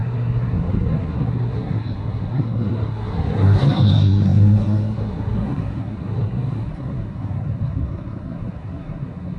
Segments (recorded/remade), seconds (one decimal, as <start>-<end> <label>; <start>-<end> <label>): 0.0-9.4 remade